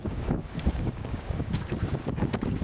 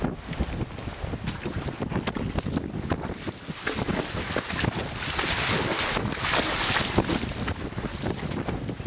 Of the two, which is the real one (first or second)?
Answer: second